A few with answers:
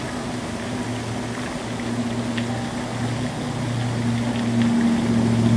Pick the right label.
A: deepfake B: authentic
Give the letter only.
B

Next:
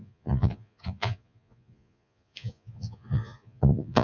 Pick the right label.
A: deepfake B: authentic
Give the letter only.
A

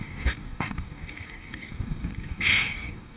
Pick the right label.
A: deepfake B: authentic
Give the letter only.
A